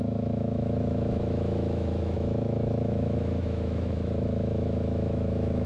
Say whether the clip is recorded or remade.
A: remade